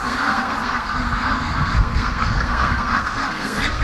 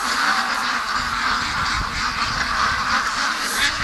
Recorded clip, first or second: second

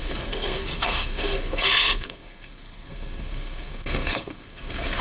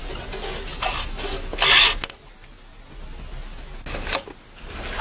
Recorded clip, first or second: second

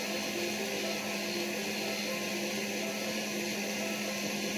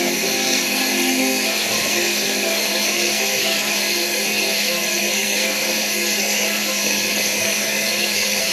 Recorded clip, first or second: first